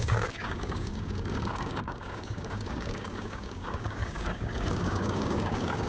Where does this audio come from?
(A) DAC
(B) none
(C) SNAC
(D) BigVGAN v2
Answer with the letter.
A